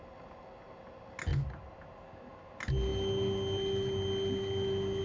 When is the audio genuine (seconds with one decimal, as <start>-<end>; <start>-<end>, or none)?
0.0-5.0